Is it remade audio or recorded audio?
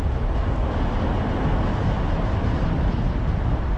recorded